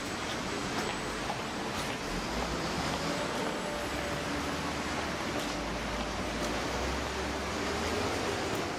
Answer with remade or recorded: recorded